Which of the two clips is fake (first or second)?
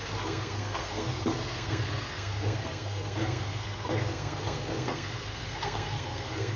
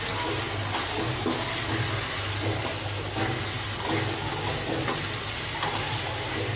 first